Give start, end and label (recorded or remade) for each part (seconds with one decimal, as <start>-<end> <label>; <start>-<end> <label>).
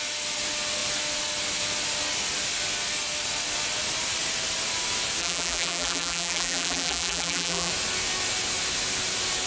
0.0-5.2 recorded; 5.2-7.7 remade; 7.7-9.5 recorded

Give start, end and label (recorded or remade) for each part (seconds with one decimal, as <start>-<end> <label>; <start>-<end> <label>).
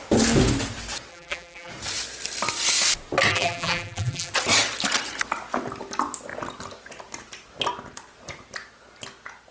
0.0-1.1 recorded; 1.1-1.7 remade; 1.7-3.3 recorded; 3.3-4.3 remade; 4.3-9.5 recorded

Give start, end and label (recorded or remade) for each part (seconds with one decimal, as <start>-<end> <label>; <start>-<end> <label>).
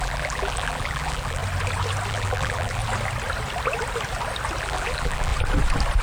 0.0-1.4 remade; 1.4-2.1 recorded; 2.1-2.8 remade; 2.8-4.6 recorded; 4.6-5.3 remade; 5.3-6.0 recorded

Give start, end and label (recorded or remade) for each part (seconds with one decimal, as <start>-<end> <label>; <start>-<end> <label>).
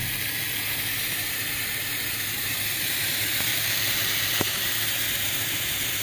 0.0-0.6 recorded; 0.6-3.5 remade; 3.5-4.4 recorded; 4.4-6.0 remade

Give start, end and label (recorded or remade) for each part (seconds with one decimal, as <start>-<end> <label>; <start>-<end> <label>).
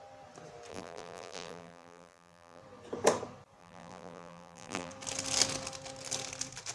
0.0-0.7 recorded; 0.7-2.6 remade; 2.6-3.6 recorded; 3.6-4.9 remade; 4.9-6.7 recorded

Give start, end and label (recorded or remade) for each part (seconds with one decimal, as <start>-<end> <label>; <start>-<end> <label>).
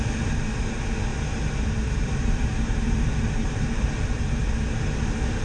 0.0-1.1 recorded; 1.1-4.3 remade; 4.3-5.4 recorded